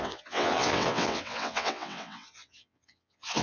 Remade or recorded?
remade